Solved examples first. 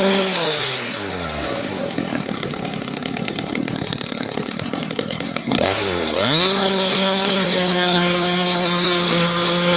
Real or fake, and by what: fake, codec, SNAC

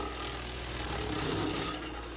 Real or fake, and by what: real